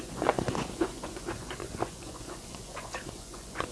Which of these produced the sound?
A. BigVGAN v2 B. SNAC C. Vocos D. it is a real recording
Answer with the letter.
C